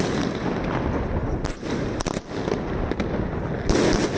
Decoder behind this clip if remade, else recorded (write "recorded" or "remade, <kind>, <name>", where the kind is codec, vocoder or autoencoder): recorded